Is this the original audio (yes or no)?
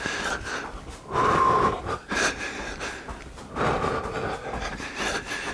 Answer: yes